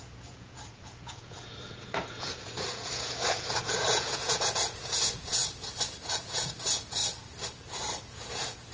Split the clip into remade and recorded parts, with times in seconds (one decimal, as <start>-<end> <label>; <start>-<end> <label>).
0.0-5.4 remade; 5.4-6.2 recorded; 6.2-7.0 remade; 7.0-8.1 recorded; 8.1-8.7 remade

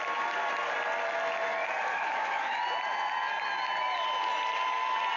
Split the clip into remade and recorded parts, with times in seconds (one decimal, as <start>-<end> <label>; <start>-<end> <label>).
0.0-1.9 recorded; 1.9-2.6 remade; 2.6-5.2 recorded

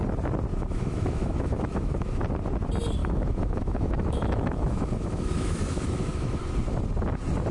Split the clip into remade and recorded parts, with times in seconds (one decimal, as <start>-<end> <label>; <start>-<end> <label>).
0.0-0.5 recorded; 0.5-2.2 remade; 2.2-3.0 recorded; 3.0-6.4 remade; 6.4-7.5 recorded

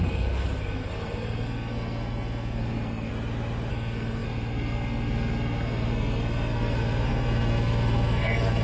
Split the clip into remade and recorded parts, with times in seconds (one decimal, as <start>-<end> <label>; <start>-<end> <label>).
0.0-3.1 remade; 3.1-3.7 recorded; 3.7-8.6 remade

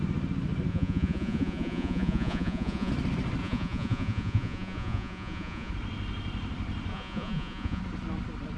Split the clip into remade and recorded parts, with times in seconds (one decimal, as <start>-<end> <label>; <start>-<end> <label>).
0.0-0.7 recorded; 0.7-2.9 remade; 2.9-3.4 recorded; 3.4-5.7 remade; 5.7-6.9 recorded; 6.9-7.8 remade; 7.8-8.6 recorded